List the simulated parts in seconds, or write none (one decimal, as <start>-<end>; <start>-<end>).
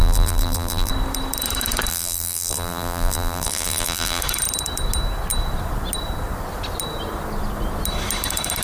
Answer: 0.0-0.9; 1.9-4.2